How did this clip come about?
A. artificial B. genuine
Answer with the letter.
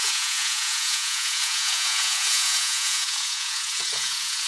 A